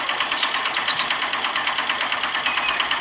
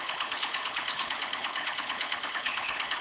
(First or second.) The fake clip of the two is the second